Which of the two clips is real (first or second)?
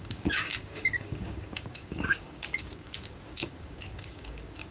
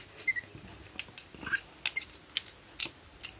second